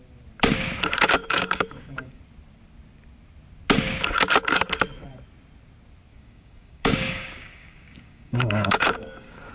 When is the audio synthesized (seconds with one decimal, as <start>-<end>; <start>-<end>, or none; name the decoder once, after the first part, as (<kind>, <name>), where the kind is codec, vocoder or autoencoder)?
1.2-2.2 (codec, DAC); 6.1-9.5